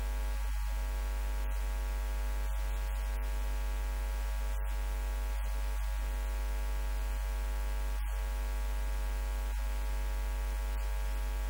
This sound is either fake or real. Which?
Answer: real